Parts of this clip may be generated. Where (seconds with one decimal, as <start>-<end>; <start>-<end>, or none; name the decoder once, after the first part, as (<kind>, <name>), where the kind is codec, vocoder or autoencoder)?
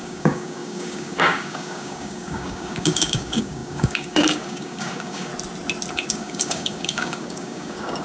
0.0-5.3 (codec, DAC); 5.9-8.0